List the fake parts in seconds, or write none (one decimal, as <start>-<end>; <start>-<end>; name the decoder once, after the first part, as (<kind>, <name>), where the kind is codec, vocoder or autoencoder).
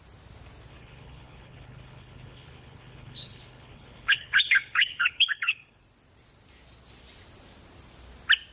0.7-5.8 (codec, HILCodec)